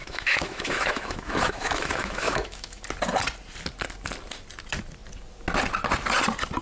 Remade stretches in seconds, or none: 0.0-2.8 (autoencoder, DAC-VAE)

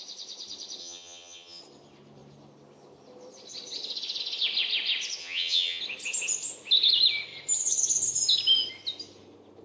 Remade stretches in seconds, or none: 0.8-1.6 (vocoder, HiFi-GAN); 5.2-5.8

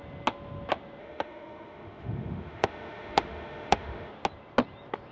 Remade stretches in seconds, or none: 1.0-4.1 (autoencoder, DAC-VAE)

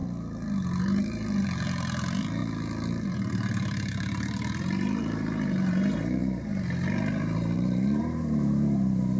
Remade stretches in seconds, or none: 0.8-2.4 (vocoder, BigVGAN v2); 3.3-9.2

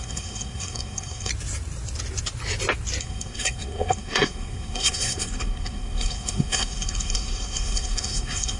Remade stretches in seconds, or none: 0.0-1.3 (codec, SNAC); 3.0-8.6

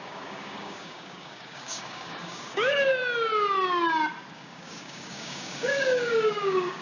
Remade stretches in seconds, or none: 0.0-3.0 (codec, DAC); 4.3-6.8

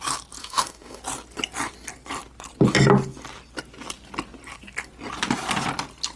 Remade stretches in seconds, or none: 0.4-1.0 (autoencoder, DAC-VAE)

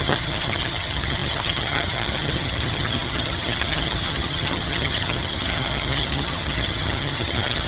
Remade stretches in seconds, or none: 0.0-7.7 (vocoder, HiFi-GAN)